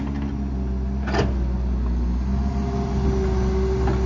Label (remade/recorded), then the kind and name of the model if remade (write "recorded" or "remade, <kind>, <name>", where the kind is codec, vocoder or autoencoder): recorded